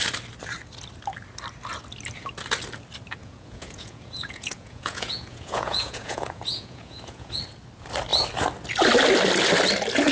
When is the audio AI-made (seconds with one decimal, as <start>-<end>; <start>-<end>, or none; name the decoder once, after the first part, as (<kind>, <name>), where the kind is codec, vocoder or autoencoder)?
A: 3.2-7.4 (vocoder, Vocos)